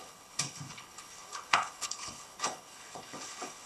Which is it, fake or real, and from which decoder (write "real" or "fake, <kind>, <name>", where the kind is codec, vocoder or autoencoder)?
fake, codec, HILCodec